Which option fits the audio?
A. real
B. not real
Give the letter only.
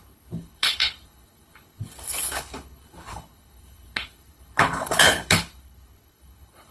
B